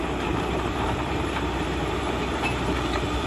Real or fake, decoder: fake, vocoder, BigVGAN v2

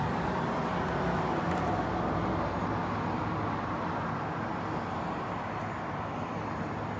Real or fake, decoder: real